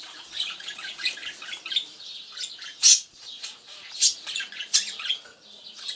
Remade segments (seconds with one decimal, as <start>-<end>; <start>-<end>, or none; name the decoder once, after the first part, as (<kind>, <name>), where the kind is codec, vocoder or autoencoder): 0.0-1.2 (vocoder, Vocos); 2.6-5.9